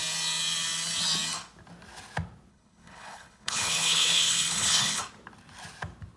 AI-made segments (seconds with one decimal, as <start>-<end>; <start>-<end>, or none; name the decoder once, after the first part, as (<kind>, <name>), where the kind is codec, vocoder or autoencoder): 2.5-5.0 (codec, HILCodec)